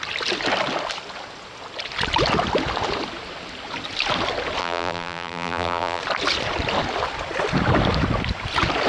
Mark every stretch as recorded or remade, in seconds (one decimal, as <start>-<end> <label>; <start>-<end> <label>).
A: 0.0-4.6 recorded; 4.6-6.0 remade; 6.0-8.9 recorded

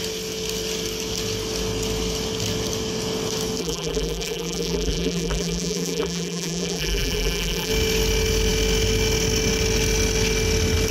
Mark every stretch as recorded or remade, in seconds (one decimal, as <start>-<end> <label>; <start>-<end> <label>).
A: 0.0-3.6 recorded; 3.6-7.7 remade; 7.7-10.9 recorded